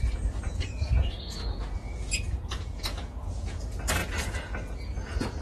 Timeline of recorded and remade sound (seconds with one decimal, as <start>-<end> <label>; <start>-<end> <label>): 0.0-4.0 remade; 4.0-5.0 recorded; 5.0-5.4 remade